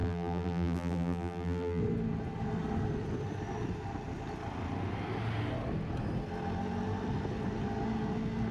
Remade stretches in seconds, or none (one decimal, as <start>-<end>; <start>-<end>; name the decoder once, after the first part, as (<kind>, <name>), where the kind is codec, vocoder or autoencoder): 0.0-1.8 (vocoder, BigVGAN v2)